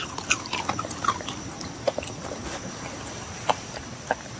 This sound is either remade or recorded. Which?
recorded